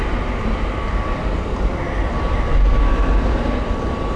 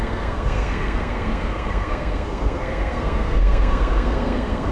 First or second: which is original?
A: first